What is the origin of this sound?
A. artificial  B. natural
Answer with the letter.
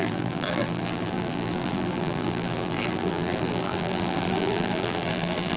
A